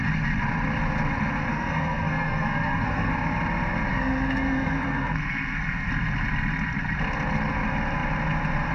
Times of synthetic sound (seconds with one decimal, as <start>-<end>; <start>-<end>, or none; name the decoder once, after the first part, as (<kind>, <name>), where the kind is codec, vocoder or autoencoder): 1.5-3.1 (codec, SNAC); 3.9-5.9